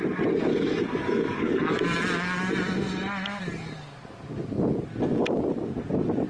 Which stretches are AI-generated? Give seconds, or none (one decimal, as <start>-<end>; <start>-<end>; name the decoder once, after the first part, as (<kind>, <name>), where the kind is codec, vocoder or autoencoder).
0.5-1.8 (codec, DAC)